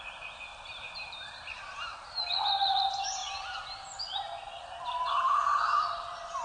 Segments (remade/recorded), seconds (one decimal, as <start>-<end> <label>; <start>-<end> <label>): 0.0-0.5 recorded; 0.5-2.2 remade; 2.2-6.4 recorded